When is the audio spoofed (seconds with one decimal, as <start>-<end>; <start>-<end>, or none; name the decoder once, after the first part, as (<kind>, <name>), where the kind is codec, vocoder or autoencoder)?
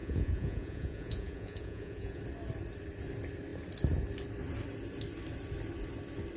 0.0-2.2 (vocoder, Vocos)